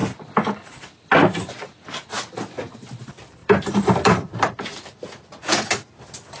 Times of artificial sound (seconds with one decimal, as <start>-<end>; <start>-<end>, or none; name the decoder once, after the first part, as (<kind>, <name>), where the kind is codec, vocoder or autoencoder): 3.4-4.9 (vocoder, BigVGAN v2)